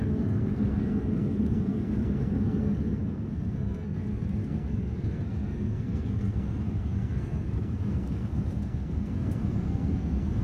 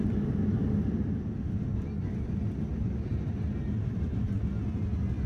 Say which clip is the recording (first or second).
second